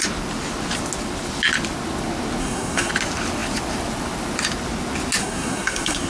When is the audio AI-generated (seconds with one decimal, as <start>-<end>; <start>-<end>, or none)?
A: 2.4-2.9; 5.2-6.1